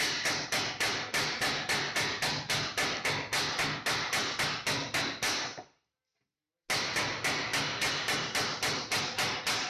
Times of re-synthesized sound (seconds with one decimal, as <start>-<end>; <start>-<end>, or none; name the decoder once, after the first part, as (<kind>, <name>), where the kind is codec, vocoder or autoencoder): none